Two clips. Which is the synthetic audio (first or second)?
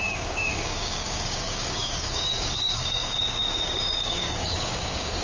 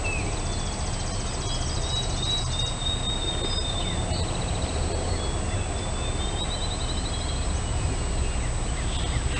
first